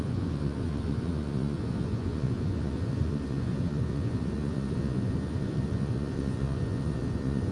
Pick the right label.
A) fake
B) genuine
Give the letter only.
A